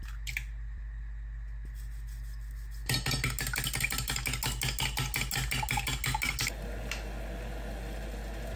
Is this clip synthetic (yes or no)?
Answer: no